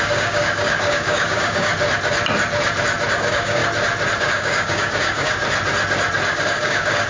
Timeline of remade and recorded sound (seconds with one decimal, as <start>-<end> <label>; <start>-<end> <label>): 0.0-1.7 remade; 1.7-3.1 recorded; 3.1-3.6 remade; 3.6-4.2 recorded; 4.2-5.4 remade; 5.4-6.3 recorded; 6.3-7.1 remade